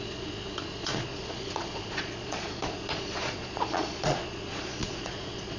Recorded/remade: remade